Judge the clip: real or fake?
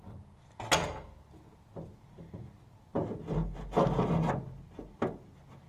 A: real